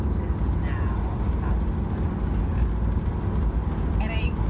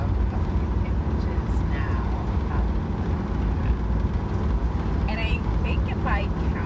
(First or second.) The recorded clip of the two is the first